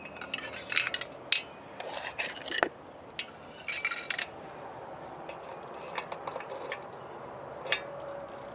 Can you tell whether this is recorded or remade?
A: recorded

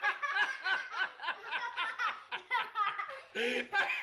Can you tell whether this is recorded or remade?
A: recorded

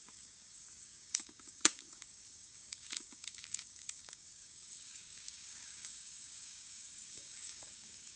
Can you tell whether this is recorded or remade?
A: remade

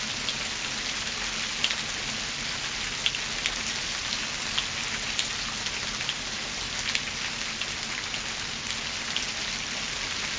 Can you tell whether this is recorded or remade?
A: recorded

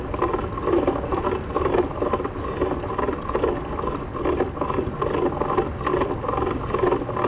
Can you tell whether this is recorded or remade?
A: recorded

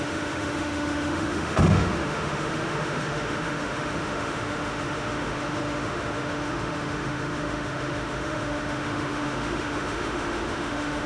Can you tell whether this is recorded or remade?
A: remade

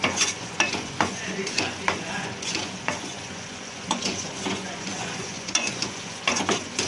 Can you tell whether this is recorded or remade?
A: remade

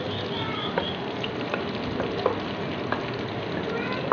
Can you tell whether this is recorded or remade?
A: recorded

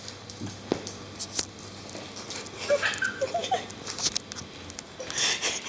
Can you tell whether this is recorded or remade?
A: recorded